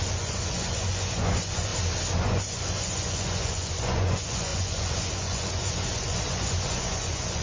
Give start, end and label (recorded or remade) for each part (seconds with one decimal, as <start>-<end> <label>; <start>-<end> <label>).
0.0-1.7 remade; 1.7-2.2 recorded; 2.2-7.4 remade